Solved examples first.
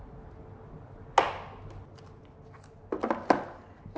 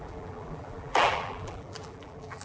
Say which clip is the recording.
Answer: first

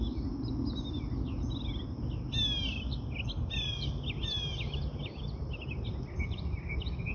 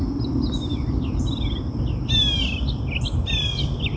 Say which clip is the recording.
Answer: first